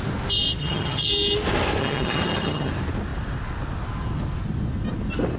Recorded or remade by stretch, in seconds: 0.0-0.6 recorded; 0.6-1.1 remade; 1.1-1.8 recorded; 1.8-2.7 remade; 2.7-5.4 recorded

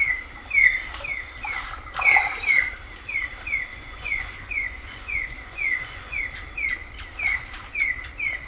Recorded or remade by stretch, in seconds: 0.0-3.7 recorded; 3.7-6.2 remade; 6.2-8.5 recorded

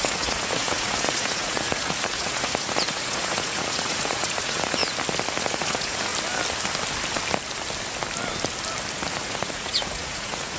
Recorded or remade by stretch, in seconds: 0.0-4.8 remade; 4.8-5.4 recorded; 5.4-6.1 remade; 6.1-9.1 recorded; 9.1-10.6 remade

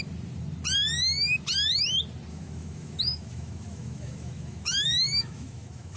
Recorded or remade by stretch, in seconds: 0.0-2.3 recorded; 2.3-6.0 remade

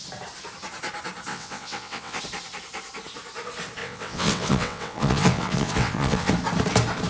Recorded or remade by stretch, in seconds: 0.0-1.3 recorded; 1.3-2.2 remade; 2.2-3.8 recorded; 3.8-6.3 remade; 6.3-7.1 recorded